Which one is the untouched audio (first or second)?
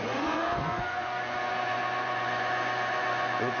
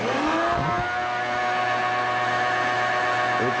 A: second